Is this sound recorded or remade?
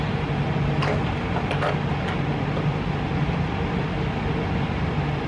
recorded